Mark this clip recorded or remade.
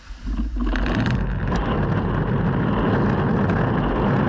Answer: recorded